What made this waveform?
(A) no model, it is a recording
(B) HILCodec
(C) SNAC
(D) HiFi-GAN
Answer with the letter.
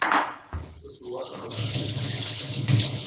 B